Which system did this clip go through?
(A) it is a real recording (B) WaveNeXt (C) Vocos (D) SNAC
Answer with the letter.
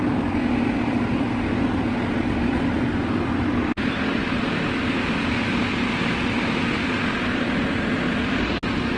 A